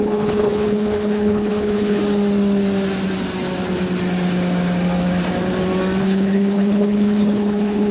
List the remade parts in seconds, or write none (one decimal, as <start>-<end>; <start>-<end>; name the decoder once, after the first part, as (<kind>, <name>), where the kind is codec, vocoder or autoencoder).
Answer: 0.0-2.0 (codec, HILCodec); 6.0-7.9